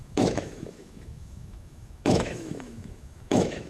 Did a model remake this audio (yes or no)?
yes